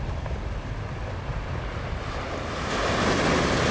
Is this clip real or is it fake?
real